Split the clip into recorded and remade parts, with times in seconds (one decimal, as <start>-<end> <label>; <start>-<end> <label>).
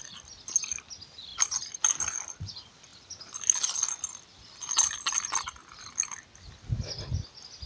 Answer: 0.0-7.7 recorded